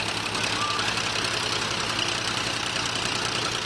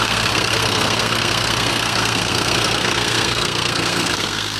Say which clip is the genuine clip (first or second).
first